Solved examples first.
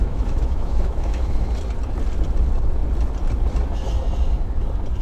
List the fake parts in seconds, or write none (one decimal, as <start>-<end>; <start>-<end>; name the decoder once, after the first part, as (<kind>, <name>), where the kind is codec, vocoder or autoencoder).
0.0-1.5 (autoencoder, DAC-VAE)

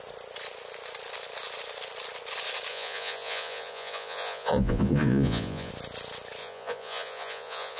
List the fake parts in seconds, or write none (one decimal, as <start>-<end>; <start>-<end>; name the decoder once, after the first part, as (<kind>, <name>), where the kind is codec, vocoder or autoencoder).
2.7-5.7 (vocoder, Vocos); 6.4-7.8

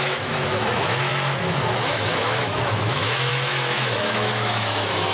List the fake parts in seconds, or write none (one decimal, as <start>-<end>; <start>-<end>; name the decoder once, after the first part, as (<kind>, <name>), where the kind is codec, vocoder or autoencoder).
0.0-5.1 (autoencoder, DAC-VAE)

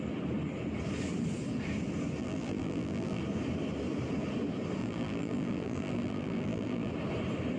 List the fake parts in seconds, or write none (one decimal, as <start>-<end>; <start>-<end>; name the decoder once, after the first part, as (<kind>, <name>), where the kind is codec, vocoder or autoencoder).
2.2-3.2 (vocoder, BigVGAN v2); 4.8-6.9

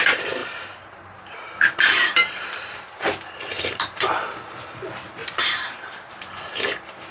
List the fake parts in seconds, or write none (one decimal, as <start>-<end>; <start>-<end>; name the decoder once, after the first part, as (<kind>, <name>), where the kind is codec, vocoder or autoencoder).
0.4-4.1 (vocoder, BigVGAN v2); 5.2-6.1

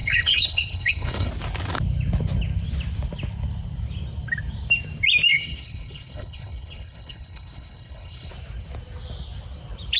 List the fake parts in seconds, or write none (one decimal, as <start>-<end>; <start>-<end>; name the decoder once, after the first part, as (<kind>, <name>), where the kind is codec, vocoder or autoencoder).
0.0-1.3 (codec, HILCodec); 5.3-8.3

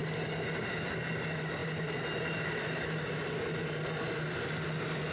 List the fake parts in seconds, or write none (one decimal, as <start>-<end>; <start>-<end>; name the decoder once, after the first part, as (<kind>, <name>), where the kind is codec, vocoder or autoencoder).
none